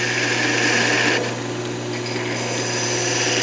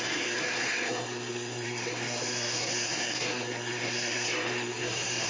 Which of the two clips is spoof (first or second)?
second